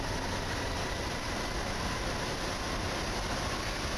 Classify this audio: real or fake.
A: real